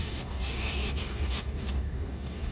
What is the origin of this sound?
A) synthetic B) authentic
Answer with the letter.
A